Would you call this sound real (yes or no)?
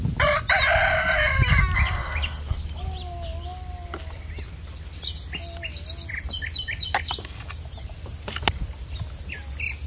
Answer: yes